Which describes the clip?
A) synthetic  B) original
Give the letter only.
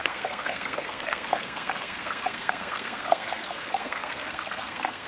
A